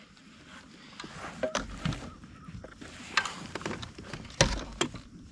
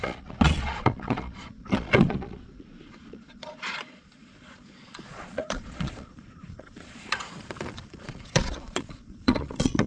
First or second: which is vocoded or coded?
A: second